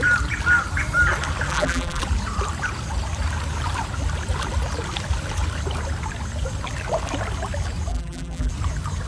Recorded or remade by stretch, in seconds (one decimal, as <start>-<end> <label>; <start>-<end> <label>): 0.0-1.5 recorded; 1.5-2.0 remade; 2.0-7.9 recorded; 7.9-8.5 remade; 8.5-9.1 recorded

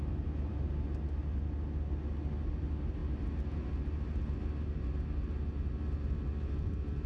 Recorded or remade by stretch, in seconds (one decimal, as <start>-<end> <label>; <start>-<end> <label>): 0.0-7.1 recorded

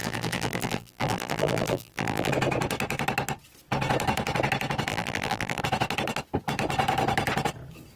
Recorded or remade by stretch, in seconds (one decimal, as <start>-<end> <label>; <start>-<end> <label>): 0.0-2.3 remade; 2.3-4.9 recorded; 4.9-5.6 remade; 5.6-8.0 recorded

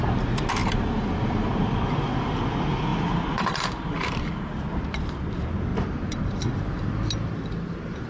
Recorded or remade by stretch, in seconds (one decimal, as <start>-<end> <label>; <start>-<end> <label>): 0.0-0.6 recorded; 0.6-1.5 remade; 1.5-2.9 recorded; 2.9-4.5 remade; 4.5-5.7 recorded; 5.7-6.9 remade; 6.9-8.1 recorded